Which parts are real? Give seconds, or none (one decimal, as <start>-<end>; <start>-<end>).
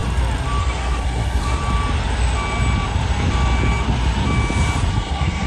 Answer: 0.0-0.6; 1.6-4.9